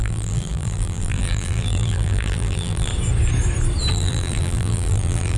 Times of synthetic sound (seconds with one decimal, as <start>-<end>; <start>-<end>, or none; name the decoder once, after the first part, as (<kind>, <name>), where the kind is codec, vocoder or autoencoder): 0.0-2.9 (vocoder, BigVGAN v2); 3.9-5.4